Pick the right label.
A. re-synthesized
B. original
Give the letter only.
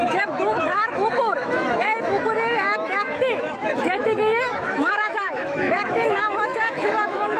A